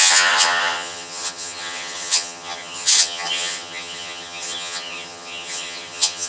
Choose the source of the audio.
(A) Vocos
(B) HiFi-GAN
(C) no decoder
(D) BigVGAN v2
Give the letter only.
B